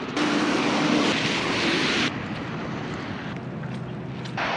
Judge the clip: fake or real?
real